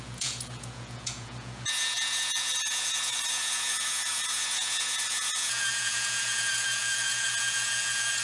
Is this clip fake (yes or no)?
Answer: yes